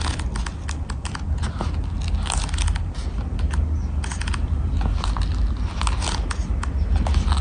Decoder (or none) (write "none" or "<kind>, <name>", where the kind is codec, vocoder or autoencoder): none